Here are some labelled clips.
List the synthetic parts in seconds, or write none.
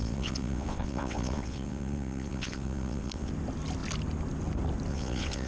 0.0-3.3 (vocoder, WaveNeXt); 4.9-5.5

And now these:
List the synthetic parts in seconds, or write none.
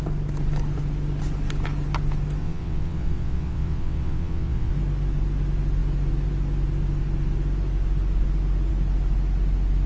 2.4-4.7 (vocoder, WaveNeXt)